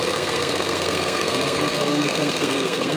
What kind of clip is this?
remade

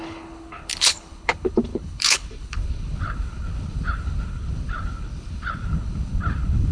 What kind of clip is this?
remade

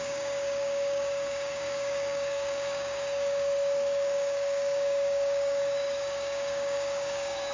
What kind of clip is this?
remade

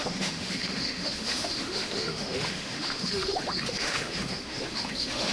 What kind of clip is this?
remade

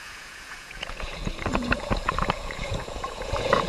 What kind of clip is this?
remade